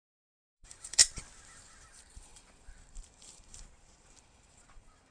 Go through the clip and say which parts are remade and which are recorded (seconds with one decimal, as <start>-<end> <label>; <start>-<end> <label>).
0.0-1.0 remade; 1.0-1.5 recorded; 1.5-5.1 remade